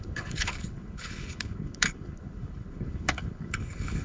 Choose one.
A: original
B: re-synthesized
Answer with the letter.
B